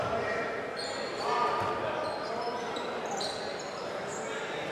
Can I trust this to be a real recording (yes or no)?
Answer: yes